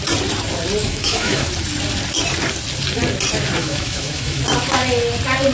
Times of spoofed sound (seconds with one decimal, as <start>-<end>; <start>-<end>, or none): 0.8-1.5; 3.6-4.4